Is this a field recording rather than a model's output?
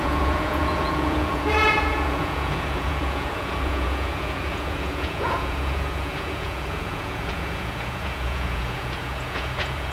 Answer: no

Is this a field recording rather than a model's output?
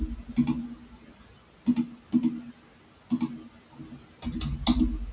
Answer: yes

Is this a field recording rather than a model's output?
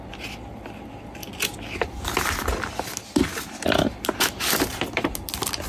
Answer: yes